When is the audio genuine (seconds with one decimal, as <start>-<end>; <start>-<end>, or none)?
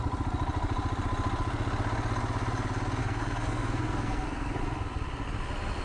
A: 0.0-3.0; 4.6-5.8